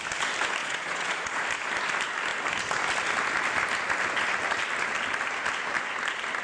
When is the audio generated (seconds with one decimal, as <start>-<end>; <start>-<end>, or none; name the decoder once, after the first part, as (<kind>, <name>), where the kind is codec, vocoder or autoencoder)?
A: 0.6-1.4 (vocoder, Vocos)